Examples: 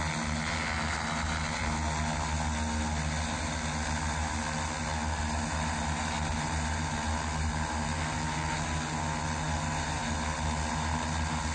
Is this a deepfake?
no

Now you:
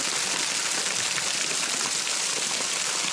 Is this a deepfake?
no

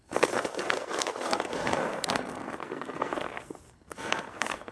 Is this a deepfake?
yes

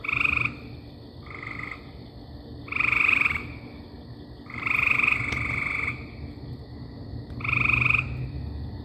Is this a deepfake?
no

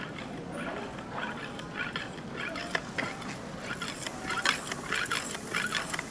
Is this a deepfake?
no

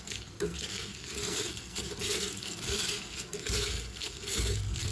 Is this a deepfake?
yes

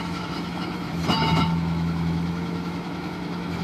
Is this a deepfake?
yes